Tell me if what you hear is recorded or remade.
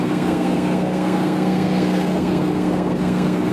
remade